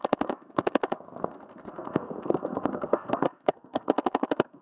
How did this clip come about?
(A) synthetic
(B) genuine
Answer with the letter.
A